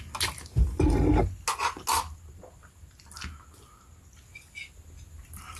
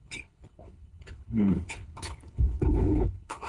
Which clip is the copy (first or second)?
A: second